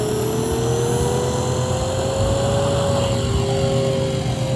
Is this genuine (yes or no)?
yes